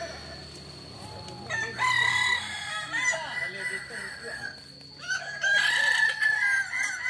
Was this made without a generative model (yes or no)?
yes